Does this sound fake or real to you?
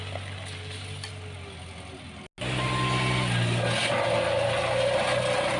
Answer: real